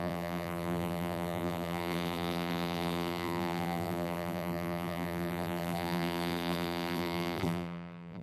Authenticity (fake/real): fake